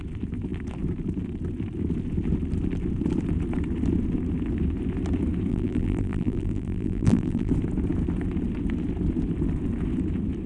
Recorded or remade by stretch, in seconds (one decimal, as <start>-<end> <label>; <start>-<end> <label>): 0.0-5.5 recorded; 5.5-7.5 remade; 7.5-10.5 recorded